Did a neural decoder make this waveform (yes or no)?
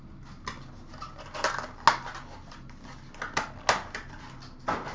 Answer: no